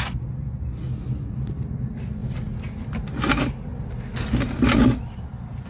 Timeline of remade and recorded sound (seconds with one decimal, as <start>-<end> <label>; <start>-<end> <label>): 0.0-5.7 recorded